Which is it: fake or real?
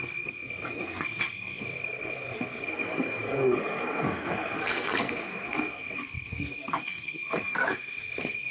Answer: fake